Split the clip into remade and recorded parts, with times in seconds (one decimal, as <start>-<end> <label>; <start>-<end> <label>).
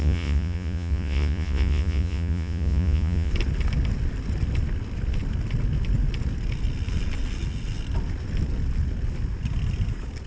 0.0-3.3 remade; 3.3-10.3 recorded